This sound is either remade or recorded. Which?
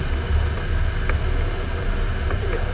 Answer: recorded